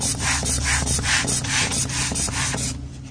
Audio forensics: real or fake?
real